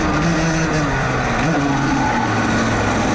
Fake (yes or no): no